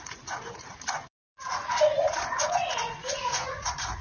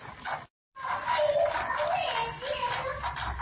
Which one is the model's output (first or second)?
first